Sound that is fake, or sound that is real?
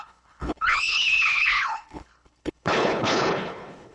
fake